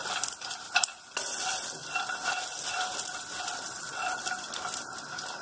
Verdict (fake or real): real